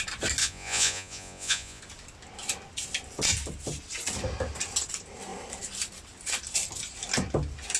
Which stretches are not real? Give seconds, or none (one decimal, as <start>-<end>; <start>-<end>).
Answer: 0.4-1.8